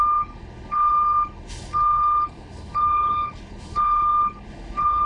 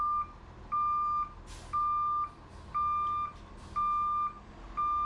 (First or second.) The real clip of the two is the second